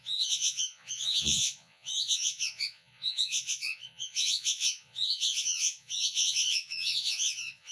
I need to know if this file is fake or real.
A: fake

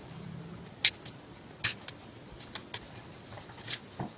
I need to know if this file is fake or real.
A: real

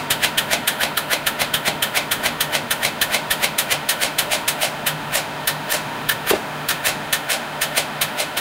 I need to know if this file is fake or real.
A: fake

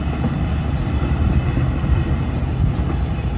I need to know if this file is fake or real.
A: real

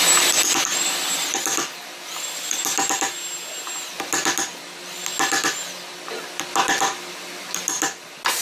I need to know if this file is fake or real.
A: real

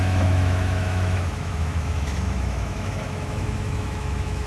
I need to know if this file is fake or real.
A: fake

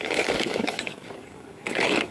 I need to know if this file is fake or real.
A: fake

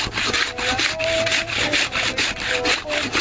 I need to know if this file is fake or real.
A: real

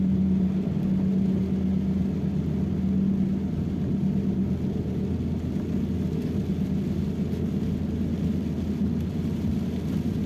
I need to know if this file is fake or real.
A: real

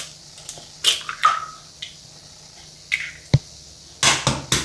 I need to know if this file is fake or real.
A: real